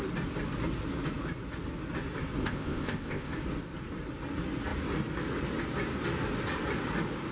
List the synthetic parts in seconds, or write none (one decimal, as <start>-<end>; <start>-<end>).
2.4-3.3

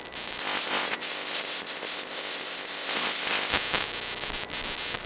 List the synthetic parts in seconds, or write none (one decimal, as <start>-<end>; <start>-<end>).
0.4-3.5

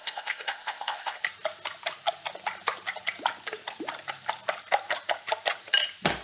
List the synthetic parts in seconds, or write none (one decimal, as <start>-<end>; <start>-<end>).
0.0-1.2

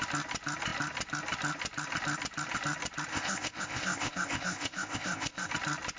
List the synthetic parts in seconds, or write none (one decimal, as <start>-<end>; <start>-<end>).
3.1-5.5

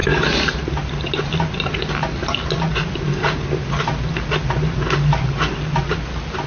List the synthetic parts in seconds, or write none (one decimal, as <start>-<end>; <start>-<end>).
none

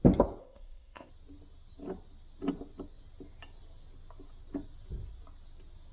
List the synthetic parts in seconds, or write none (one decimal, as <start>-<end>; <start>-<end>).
0.4-1.1